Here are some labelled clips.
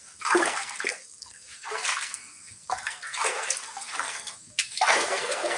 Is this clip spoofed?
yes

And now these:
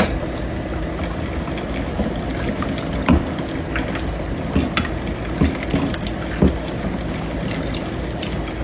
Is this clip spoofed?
no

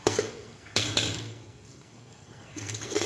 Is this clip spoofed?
yes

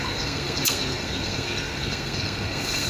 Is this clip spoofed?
yes